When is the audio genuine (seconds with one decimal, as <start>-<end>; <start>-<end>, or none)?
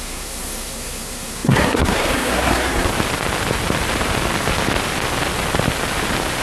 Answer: 2.9-6.4